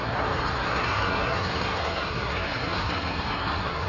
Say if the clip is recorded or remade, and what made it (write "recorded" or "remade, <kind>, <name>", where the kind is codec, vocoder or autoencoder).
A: remade, codec, SNAC